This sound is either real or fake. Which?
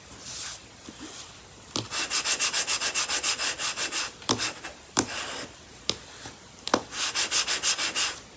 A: real